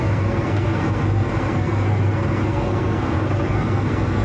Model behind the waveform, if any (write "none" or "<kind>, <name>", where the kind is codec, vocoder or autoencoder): codec, SNAC